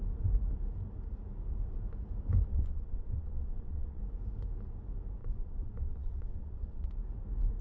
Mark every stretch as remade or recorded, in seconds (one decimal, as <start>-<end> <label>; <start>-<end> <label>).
0.0-2.5 recorded; 2.5-4.0 remade; 4.0-5.2 recorded; 5.2-6.9 remade; 6.9-7.6 recorded

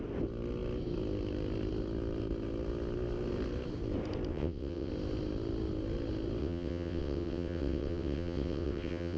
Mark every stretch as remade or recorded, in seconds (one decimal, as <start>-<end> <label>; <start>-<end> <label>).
0.0-4.3 recorded; 4.3-4.9 remade; 4.9-6.4 recorded; 6.4-9.2 remade